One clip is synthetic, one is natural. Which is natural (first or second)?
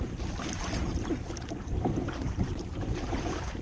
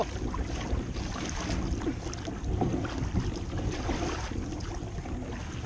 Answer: second